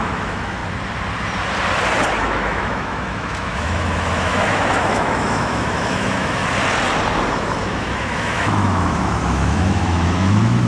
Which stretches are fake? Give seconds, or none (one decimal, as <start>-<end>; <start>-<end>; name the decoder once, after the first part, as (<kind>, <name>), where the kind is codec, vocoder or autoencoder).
0.0-0.6 (autoencoder, DAC-VAE); 2.2-6.4; 7.3-10.7